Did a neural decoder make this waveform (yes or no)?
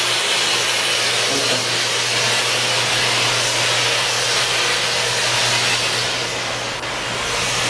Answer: no